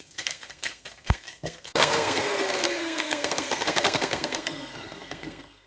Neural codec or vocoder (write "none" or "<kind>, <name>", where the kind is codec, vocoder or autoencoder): codec, SNAC